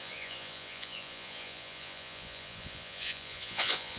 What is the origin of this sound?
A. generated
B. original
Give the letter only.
A